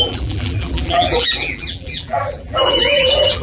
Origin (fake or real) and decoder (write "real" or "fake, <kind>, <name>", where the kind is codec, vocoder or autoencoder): fake, vocoder, BigVGAN v2